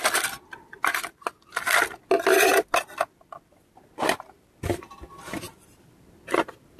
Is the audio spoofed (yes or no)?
no